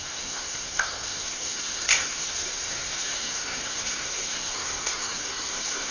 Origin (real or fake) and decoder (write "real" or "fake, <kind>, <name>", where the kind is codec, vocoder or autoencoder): fake, codec, SNAC